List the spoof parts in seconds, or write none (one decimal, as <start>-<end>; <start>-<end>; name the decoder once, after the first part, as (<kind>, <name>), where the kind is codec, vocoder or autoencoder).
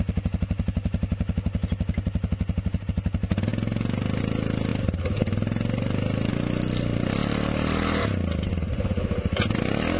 none